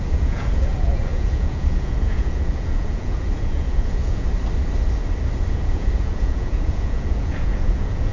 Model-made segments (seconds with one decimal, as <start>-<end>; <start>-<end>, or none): 0.0-4.3; 5.5-8.1